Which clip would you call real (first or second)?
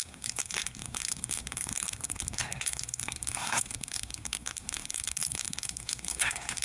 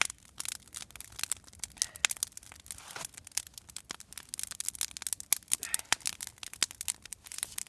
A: second